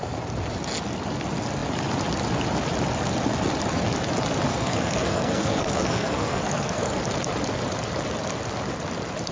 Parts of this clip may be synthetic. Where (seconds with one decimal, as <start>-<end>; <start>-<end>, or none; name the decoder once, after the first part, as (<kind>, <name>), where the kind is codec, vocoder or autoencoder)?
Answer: 4.5-7.0 (codec, SNAC)